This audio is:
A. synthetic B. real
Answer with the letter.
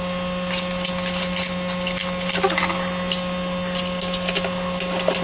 B